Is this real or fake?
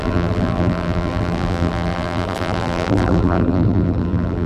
fake